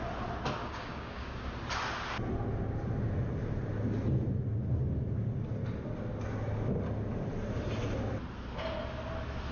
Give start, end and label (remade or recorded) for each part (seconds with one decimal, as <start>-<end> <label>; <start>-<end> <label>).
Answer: 0.0-0.6 recorded; 0.6-1.5 remade; 1.5-9.5 recorded